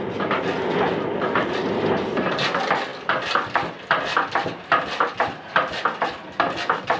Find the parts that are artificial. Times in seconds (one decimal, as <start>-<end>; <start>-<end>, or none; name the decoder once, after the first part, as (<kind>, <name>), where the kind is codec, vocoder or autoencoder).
none